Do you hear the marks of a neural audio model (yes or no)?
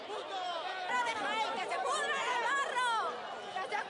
no